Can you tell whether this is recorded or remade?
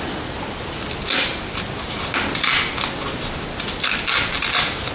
recorded